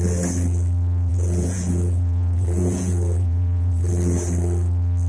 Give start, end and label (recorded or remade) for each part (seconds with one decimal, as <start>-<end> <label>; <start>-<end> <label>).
0.0-1.1 recorded; 1.1-3.9 remade; 3.9-5.1 recorded